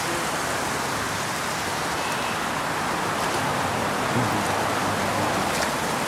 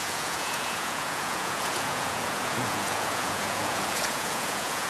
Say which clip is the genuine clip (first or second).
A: first